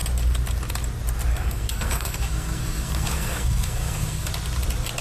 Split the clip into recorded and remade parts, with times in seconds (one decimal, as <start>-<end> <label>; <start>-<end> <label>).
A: 0.0-1.3 recorded; 1.3-4.3 remade; 4.3-5.0 recorded